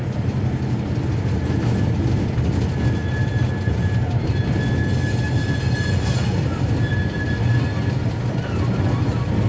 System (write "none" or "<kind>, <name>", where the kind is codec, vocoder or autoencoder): none